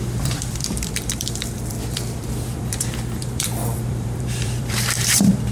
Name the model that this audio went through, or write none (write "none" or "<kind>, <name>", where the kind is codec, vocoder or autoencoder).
vocoder, BigVGAN v2